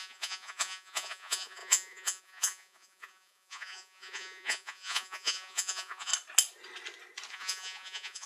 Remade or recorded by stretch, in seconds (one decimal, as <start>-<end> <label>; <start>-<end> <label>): 0.0-6.1 remade; 6.1-7.3 recorded; 7.3-8.3 remade